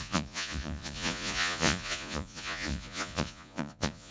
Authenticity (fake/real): fake